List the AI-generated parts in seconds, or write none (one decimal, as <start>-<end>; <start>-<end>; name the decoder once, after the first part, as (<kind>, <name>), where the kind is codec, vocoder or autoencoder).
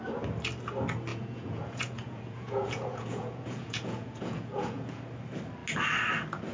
1.1-5.0 (vocoder, Vocos)